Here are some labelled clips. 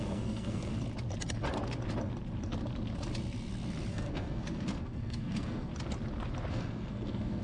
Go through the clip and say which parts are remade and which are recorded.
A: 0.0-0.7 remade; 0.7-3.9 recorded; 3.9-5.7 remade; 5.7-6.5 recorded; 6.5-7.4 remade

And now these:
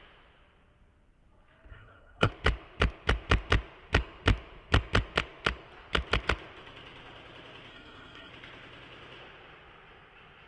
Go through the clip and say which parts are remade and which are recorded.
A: 0.0-1.7 recorded; 1.7-2.3 remade; 2.3-7.7 recorded; 7.7-8.3 remade; 8.3-10.5 recorded

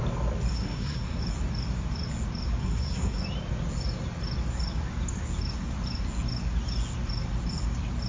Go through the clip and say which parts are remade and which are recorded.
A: 0.0-0.5 recorded; 0.5-1.2 remade; 1.2-2.6 recorded; 2.6-3.2 remade; 3.2-8.1 recorded